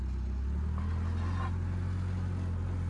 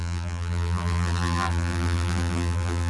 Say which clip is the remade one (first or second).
second